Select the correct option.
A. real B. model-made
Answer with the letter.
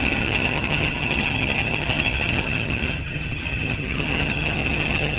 B